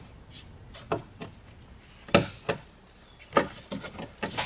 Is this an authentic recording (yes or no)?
yes